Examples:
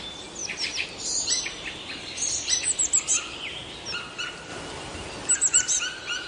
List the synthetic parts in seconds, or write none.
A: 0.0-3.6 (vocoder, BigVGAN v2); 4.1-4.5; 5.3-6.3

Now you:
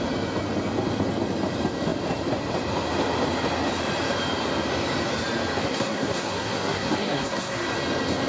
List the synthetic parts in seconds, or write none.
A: 5.6-7.7 (codec, SNAC)

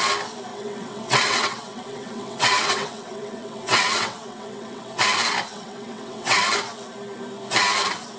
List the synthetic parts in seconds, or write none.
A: 0.5-5.0 (vocoder, WaveNeXt); 5.5-6.4

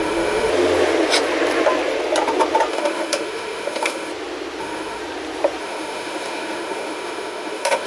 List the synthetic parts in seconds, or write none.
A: 0.0-0.5 (autoencoder, DAC-VAE); 2.7-4.1; 4.6-5.0; 5.6-7.9

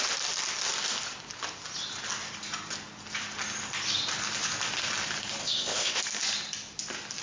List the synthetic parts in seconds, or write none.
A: 5.4-6.0 (codec, ZipCodec)

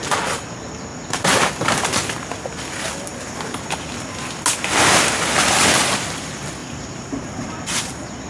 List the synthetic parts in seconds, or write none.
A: 0.9-1.5 (vocoder, BigVGAN v2); 6.6-7.9

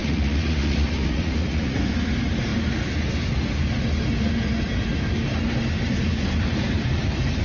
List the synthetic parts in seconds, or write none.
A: 0.0-1.8 (vocoder, Vocos)